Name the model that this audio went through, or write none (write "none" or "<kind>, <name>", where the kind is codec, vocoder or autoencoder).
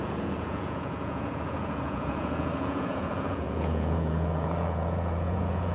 vocoder, Vocos